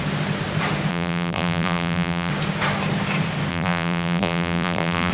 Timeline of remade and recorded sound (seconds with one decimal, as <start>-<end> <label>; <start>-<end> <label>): 0.0-0.9 recorded; 0.9-2.3 remade; 2.3-3.5 recorded; 3.5-5.1 remade

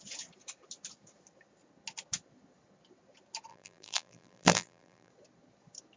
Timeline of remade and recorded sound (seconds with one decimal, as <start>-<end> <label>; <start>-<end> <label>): 0.0-3.5 recorded; 3.5-5.1 remade; 5.1-6.0 recorded

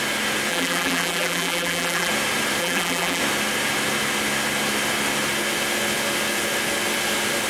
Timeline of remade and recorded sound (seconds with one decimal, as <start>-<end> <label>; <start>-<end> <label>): 0.0-0.5 recorded; 0.5-2.1 remade; 2.1-2.6 recorded; 2.6-3.2 remade; 3.2-7.5 recorded

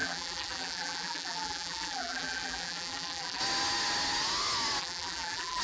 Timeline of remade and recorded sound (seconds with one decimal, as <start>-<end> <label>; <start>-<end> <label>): 0.0-3.4 remade; 3.4-4.8 recorded; 4.8-5.6 remade